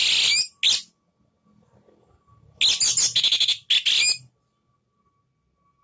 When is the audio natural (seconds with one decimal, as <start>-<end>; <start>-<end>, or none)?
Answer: 0.0-5.8